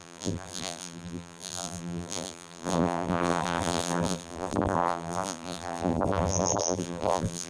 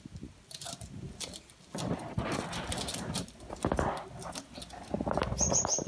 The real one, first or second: second